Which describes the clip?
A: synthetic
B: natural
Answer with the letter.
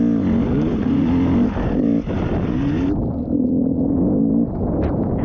B